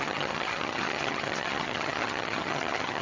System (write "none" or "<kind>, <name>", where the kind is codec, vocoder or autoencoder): vocoder, HiFi-GAN